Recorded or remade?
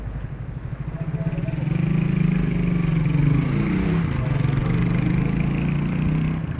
recorded